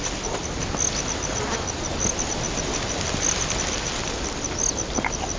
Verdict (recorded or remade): recorded